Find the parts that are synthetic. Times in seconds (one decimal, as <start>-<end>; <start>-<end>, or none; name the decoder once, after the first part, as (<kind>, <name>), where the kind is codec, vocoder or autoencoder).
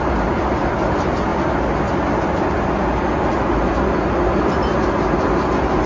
none